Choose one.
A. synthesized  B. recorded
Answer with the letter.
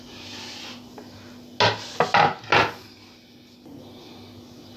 B